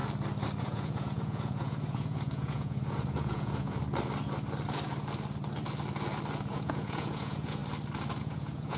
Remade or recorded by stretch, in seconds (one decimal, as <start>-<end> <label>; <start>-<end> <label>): 0.0-0.6 recorded; 0.6-3.8 remade; 3.8-6.5 recorded; 6.5-7.6 remade; 7.6-8.2 recorded; 8.2-8.8 remade